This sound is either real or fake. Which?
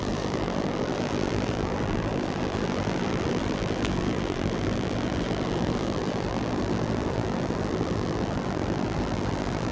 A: fake